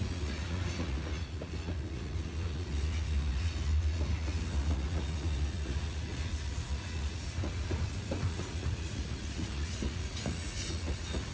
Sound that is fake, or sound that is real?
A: fake